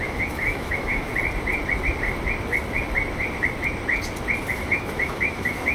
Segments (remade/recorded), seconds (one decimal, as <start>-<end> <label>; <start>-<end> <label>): 0.0-1.1 remade; 1.1-4.5 recorded; 4.5-5.7 remade